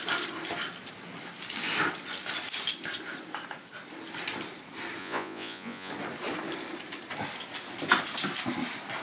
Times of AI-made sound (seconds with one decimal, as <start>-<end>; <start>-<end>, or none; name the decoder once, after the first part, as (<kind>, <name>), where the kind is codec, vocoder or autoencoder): 5.0-5.9 (vocoder, Vocos)